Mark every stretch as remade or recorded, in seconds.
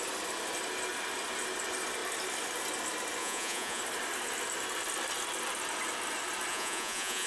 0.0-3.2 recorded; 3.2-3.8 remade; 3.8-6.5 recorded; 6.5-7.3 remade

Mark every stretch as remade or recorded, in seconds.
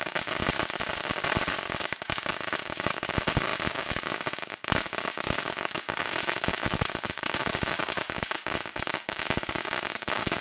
0.0-0.4 remade; 0.4-1.8 recorded; 1.8-10.4 remade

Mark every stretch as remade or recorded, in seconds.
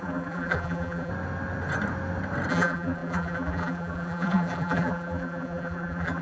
0.0-1.1 remade; 1.1-2.5 recorded; 2.5-6.2 remade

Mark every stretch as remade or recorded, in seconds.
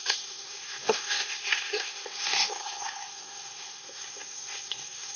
0.0-5.2 remade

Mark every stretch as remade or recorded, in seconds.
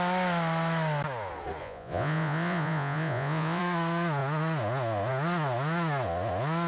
0.0-1.6 recorded; 1.6-3.6 remade; 3.6-6.7 recorded